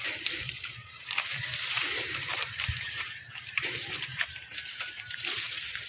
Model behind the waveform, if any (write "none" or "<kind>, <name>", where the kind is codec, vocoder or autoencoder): vocoder, BigVGAN v2